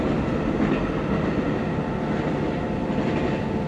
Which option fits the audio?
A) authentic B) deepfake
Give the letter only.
A